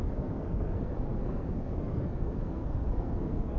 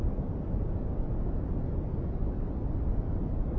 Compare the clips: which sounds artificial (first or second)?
first